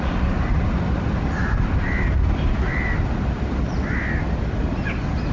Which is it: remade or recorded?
recorded